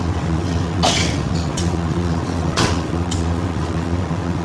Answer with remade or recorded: remade